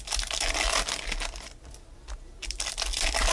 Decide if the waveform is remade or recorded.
recorded